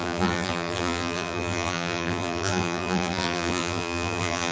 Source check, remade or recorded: remade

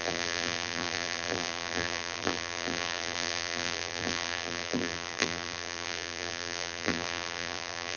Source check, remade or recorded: remade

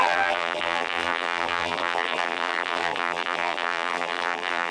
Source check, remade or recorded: remade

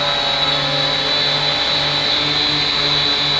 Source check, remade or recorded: recorded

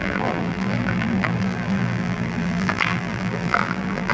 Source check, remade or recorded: remade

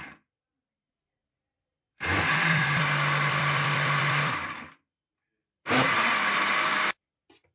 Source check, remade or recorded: remade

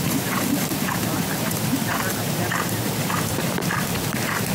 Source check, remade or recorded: remade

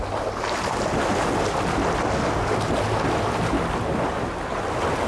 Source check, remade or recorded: recorded